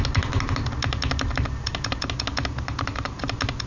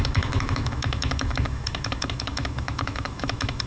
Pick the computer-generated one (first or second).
second